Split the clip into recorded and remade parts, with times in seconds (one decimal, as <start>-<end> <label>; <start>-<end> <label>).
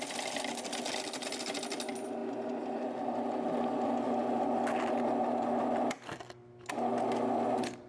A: 0.0-7.9 recorded